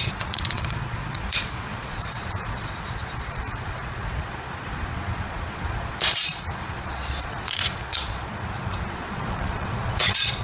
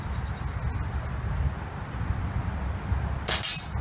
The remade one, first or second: first